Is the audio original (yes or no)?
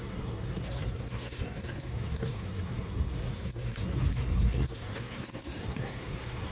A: no